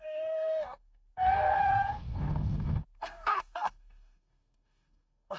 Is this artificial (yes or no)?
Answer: yes